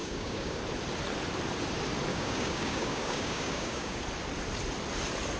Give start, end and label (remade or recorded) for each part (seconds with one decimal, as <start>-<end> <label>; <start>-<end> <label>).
0.0-0.6 remade; 0.6-2.1 recorded; 2.1-4.0 remade; 4.0-5.4 recorded

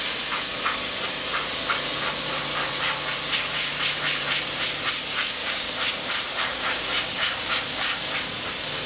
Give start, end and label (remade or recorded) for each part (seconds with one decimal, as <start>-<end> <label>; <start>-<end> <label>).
0.0-5.1 recorded; 5.1-5.7 remade; 5.7-6.5 recorded; 6.5-7.7 remade; 7.7-8.9 recorded

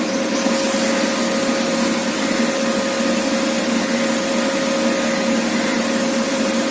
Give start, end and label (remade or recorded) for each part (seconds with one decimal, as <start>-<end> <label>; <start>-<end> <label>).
0.0-6.7 recorded

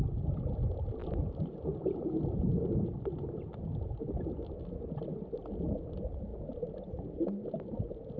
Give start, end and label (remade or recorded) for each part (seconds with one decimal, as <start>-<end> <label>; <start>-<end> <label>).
0.0-8.2 recorded

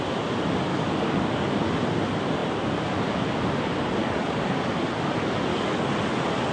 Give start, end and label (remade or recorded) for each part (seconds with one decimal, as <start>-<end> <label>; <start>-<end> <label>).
0.0-0.7 recorded; 0.7-1.5 remade; 1.5-4.0 recorded; 4.0-4.9 remade; 4.9-5.5 recorded; 5.5-6.0 remade; 6.0-6.5 recorded

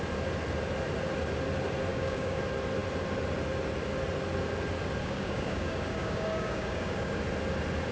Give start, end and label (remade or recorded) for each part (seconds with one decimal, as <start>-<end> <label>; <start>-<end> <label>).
0.0-1.9 recorded; 1.9-2.4 remade; 2.4-5.0 recorded; 5.0-7.2 remade; 7.2-7.9 recorded

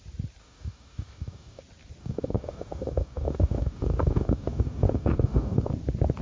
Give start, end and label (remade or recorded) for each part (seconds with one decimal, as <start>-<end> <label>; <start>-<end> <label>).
0.0-0.4 recorded; 0.4-1.6 remade; 1.6-2.0 recorded; 2.0-5.7 remade; 5.7-6.2 recorded

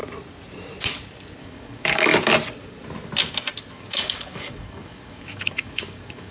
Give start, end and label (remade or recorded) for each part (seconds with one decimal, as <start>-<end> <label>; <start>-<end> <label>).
0.0-1.4 recorded; 1.4-2.1 remade; 2.1-3.7 recorded; 3.7-6.3 remade